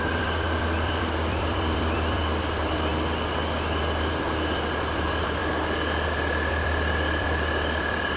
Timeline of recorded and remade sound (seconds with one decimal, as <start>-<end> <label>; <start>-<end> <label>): 0.0-2.9 remade; 2.9-4.1 recorded; 4.1-5.4 remade; 5.4-6.5 recorded; 6.5-8.2 remade